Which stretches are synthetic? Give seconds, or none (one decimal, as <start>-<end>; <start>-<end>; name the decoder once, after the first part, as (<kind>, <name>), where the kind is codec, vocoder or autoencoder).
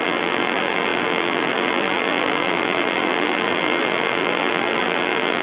0.0-5.4 (vocoder, BigVGAN v2)